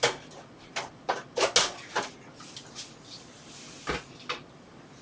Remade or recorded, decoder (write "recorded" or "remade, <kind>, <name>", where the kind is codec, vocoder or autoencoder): recorded